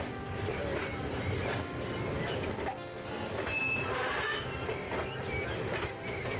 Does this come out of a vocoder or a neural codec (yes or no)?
no